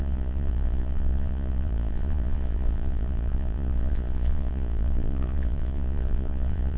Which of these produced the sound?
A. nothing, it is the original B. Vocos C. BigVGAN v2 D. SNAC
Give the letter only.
B